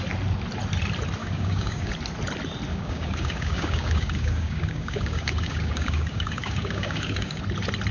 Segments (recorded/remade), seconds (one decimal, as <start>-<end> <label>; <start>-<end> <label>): 0.0-1.2 recorded; 1.2-1.9 remade; 1.9-2.7 recorded; 2.7-7.4 remade; 7.4-7.9 recorded